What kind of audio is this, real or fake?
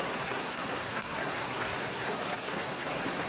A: fake